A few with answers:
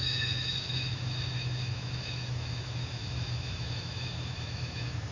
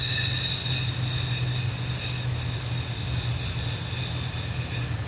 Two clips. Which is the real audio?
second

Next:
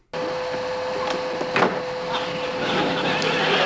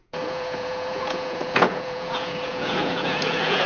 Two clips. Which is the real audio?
first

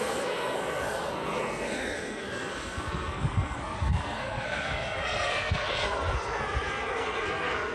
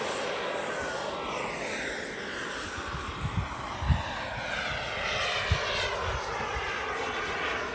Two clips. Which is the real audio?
second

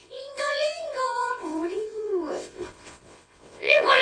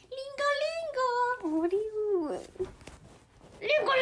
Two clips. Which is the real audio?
second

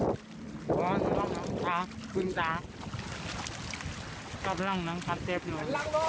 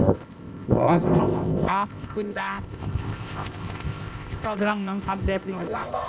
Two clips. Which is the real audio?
first